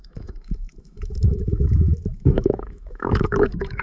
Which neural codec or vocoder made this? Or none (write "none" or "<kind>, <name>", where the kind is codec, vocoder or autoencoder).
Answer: autoencoder, DAC-VAE